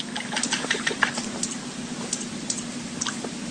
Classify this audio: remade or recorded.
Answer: recorded